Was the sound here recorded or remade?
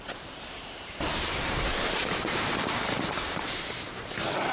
remade